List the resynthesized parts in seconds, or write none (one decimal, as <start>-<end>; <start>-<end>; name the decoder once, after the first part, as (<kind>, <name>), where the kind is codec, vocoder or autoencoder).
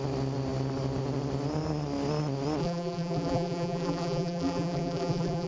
2.6-5.5 (vocoder, BigVGAN v2)